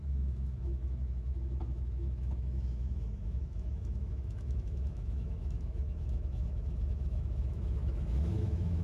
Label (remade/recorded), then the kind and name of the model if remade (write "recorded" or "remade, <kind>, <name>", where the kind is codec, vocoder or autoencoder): remade, autoencoder, DAC-VAE